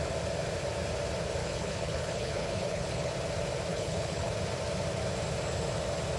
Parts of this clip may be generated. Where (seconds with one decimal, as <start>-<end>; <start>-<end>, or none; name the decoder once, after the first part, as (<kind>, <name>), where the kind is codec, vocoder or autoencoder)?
1.4-3.1 (codec, HILCodec); 3.7-4.3